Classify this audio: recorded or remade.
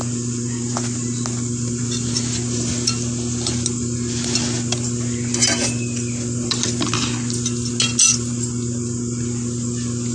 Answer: recorded